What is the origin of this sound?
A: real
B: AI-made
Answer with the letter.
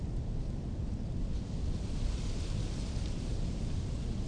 A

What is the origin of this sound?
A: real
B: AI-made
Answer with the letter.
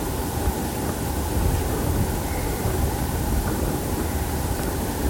B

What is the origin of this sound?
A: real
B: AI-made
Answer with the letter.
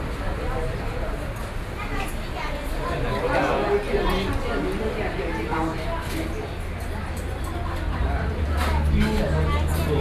A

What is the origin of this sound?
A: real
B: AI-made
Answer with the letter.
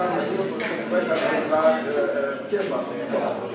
A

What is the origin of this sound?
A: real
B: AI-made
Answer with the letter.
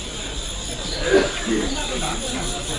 A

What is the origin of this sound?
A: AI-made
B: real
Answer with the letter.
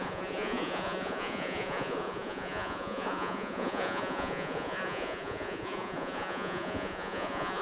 A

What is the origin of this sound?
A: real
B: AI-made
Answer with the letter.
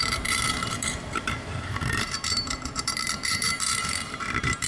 B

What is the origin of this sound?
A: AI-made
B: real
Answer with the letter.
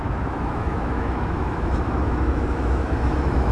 A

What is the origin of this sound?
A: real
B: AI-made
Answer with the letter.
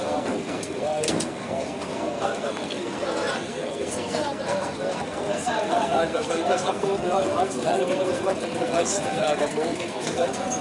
B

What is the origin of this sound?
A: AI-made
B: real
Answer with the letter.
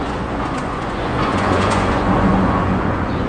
A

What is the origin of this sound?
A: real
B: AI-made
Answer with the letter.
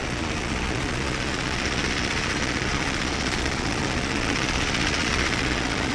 B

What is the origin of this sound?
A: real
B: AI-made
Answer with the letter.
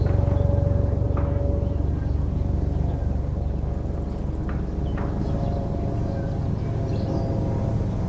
A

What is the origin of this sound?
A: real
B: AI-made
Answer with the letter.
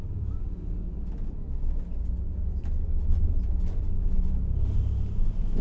A